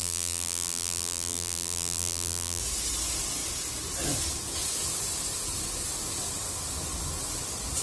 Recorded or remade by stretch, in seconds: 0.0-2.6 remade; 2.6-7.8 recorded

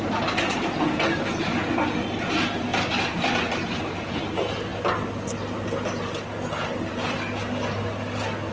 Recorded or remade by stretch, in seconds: 0.0-2.7 recorded; 2.7-4.2 remade; 4.2-8.5 recorded

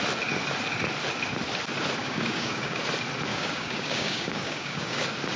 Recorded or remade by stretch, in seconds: 0.0-2.0 recorded; 2.0-2.8 remade; 2.8-3.3 recorded; 3.3-5.0 remade; 5.0-5.4 recorded

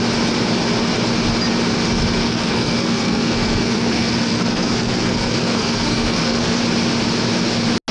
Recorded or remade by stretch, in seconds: 0.0-2.2 recorded; 2.2-6.6 remade; 6.6-7.9 recorded

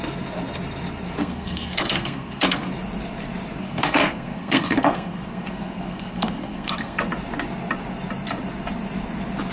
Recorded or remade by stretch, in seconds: 0.0-1.2 recorded; 1.2-2.7 remade; 2.7-3.6 recorded; 3.6-7.0 remade; 7.0-9.5 recorded

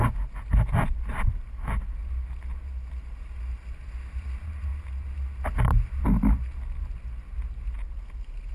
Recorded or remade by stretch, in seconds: 0.0-8.5 recorded

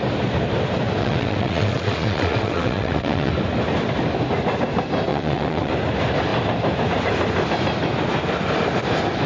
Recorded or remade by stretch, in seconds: 0.0-1.0 recorded; 1.0-3.3 remade; 3.3-5.1 recorded; 5.1-5.7 remade; 5.7-9.3 recorded

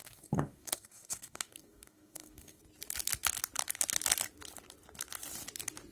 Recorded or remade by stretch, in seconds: 0.0-2.6 remade; 2.6-5.9 recorded